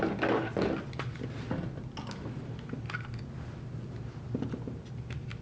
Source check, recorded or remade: recorded